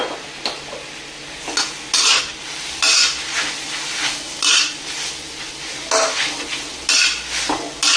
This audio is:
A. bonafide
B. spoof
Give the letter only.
A